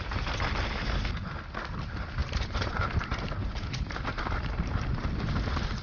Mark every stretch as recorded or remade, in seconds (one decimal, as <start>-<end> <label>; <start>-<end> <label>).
0.0-2.2 recorded; 2.2-2.9 remade; 2.9-3.4 recorded; 3.4-4.3 remade; 4.3-5.8 recorded